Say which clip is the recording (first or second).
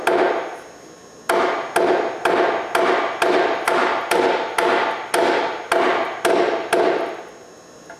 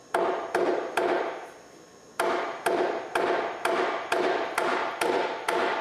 first